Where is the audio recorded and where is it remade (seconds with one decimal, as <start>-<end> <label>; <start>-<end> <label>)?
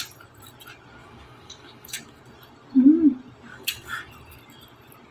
0.0-1.0 recorded; 1.0-2.2 remade; 2.2-3.5 recorded; 3.5-4.1 remade; 4.1-5.1 recorded